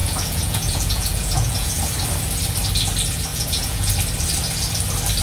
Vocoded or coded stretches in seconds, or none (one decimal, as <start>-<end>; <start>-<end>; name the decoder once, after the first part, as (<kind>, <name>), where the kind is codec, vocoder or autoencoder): 0.0-1.8 (vocoder, Vocos); 3.3-3.9